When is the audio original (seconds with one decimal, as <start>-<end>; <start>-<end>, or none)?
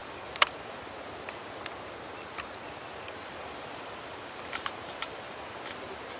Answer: 0.8-2.9; 5.6-6.2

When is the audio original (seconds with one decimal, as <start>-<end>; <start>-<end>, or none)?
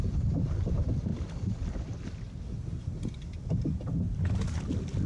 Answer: 0.0-5.1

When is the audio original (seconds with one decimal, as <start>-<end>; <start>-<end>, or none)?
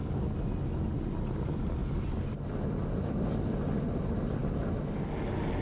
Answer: 0.0-5.6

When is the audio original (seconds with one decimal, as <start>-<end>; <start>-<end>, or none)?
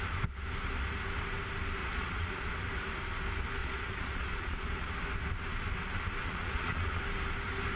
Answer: 0.0-1.8; 2.5-3.6; 4.9-6.2; 7.0-7.8